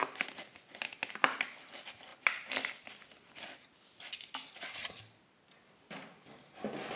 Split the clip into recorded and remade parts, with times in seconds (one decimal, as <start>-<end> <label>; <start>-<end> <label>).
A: 0.0-7.0 recorded